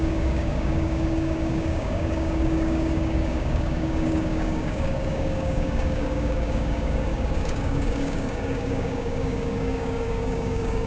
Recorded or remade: remade